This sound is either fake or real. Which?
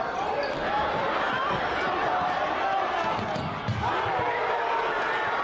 real